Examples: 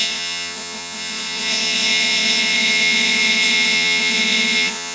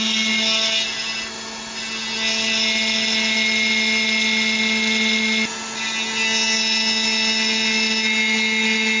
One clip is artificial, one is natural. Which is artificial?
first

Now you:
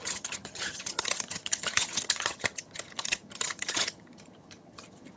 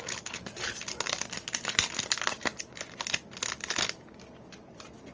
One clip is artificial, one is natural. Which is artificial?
first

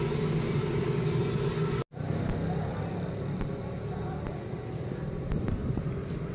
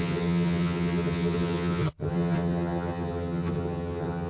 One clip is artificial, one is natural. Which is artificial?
second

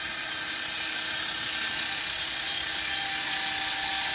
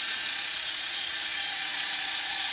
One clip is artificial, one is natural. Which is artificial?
second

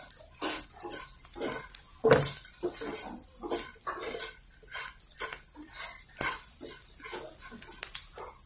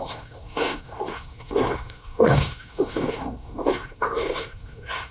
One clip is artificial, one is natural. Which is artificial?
second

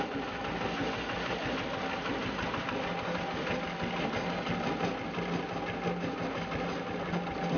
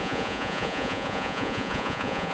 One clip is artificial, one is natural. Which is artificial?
second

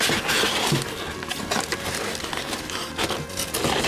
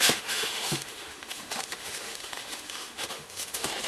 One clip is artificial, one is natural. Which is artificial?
second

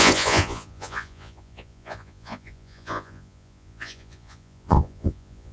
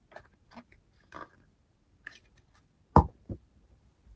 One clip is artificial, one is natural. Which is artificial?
first